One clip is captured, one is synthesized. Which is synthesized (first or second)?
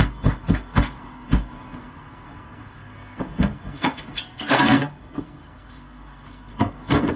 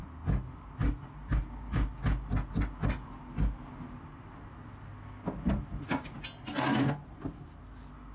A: first